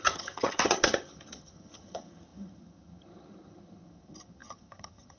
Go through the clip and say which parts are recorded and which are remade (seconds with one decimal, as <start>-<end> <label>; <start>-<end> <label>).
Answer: 0.0-5.2 remade